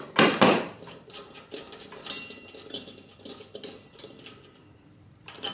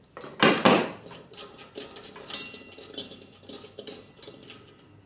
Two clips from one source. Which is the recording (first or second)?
second